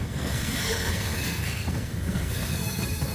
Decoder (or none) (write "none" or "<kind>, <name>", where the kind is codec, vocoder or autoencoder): codec, SNAC